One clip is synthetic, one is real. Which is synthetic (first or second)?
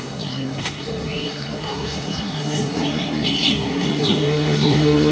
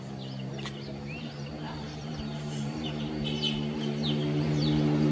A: first